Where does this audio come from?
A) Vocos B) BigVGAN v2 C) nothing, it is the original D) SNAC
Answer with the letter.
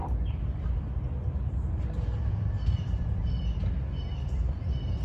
C